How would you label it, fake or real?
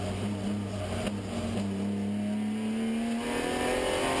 real